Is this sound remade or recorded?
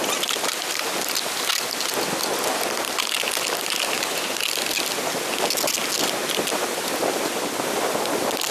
recorded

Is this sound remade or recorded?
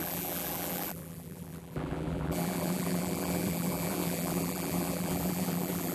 remade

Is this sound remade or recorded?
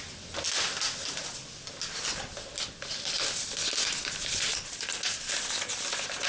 recorded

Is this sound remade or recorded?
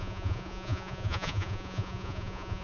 remade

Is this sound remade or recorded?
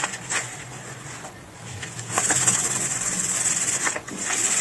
remade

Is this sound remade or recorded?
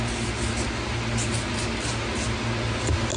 recorded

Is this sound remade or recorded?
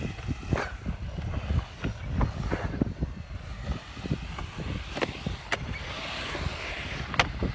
recorded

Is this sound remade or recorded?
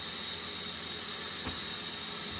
recorded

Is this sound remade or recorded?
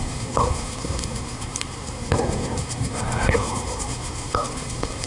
remade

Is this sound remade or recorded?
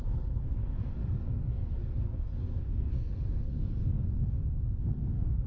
remade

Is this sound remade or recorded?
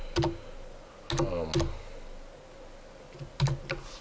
recorded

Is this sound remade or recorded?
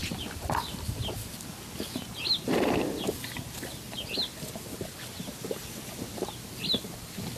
recorded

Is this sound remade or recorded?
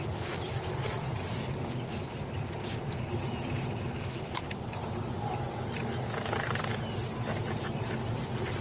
recorded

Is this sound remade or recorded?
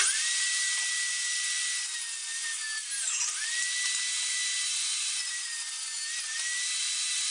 recorded